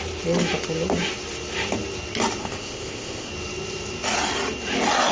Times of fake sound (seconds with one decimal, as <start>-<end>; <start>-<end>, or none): 2.4-3.3